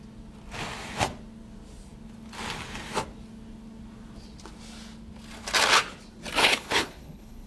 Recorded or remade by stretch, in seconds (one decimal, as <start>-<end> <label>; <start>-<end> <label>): 0.0-6.4 recorded; 6.4-7.5 remade